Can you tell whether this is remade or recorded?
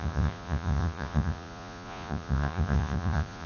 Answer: remade